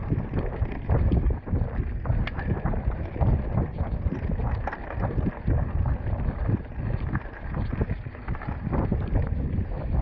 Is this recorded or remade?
recorded